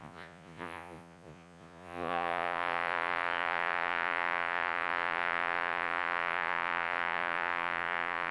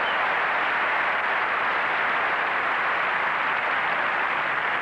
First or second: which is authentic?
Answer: second